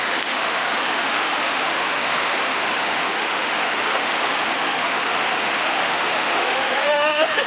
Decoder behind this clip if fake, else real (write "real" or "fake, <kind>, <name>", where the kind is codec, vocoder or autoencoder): fake, autoencoder, DAC-VAE